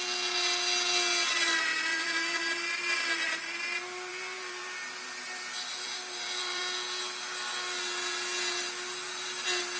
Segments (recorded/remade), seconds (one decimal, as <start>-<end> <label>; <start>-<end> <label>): 0.0-1.9 recorded; 1.9-3.1 remade; 3.1-4.1 recorded; 4.1-6.6 remade; 6.6-9.8 recorded